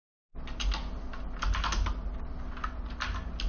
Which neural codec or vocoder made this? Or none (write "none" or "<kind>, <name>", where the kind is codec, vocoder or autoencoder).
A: none